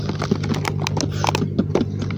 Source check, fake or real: real